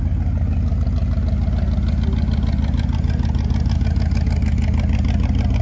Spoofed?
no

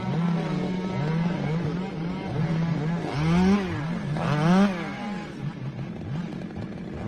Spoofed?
no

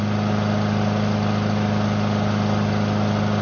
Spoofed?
no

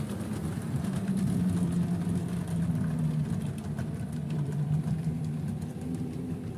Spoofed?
no